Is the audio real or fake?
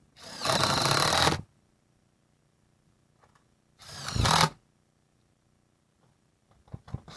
real